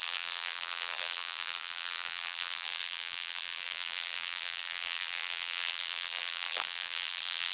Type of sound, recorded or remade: remade